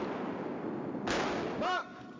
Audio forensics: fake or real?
real